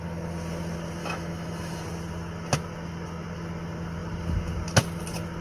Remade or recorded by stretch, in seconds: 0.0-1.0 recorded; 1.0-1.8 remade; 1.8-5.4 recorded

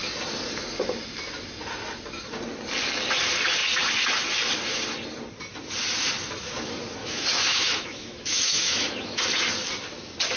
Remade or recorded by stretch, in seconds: 0.0-7.0 recorded; 7.0-9.2 remade; 9.2-10.4 recorded

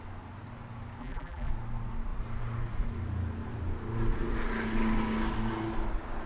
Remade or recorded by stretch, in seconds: 0.0-1.0 recorded; 1.0-1.5 remade; 1.5-6.3 recorded

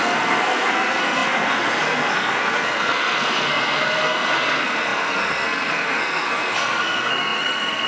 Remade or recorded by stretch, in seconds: 0.0-7.9 remade

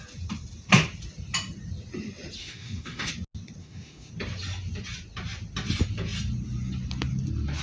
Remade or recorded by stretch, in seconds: 0.0-2.4 recorded; 2.4-3.1 remade; 3.1-3.6 recorded; 3.6-4.1 remade; 4.1-7.6 recorded

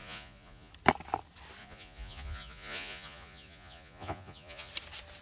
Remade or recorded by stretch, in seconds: 0.0-0.7 remade; 0.7-1.6 recorded; 1.6-4.7 remade; 4.7-5.2 recorded

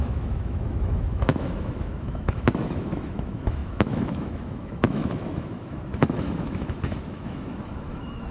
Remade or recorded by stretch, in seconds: 0.0-8.3 remade

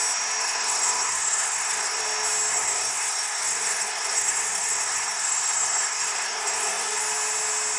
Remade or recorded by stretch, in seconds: 0.0-0.4 recorded; 0.4-2.0 remade; 2.0-2.5 recorded; 2.5-7.0 remade; 7.0-7.8 recorded